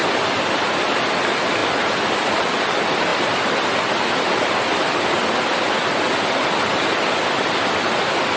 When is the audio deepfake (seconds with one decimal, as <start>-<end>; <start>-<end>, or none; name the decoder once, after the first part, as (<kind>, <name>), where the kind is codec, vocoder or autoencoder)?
none